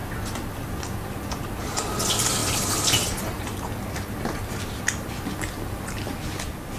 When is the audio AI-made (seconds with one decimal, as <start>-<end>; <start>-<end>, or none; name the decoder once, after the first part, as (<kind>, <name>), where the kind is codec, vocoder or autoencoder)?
none